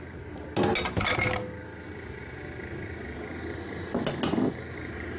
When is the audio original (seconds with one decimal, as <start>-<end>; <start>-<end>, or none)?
0.0-5.2